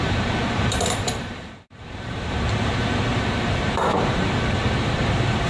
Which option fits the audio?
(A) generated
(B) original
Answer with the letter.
A